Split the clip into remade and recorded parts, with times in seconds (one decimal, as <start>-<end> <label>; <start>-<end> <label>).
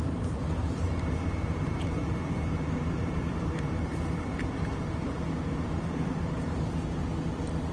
0.0-7.0 remade; 7.0-7.7 recorded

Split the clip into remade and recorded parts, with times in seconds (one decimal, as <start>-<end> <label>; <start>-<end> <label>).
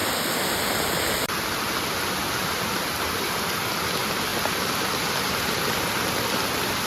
0.0-4.3 remade; 4.3-5.2 recorded; 5.2-6.9 remade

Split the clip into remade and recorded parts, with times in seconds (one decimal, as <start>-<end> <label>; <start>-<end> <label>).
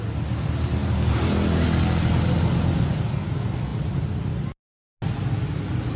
0.0-0.8 recorded; 0.8-1.3 remade; 1.3-3.7 recorded; 3.7-4.3 remade; 4.3-6.0 recorded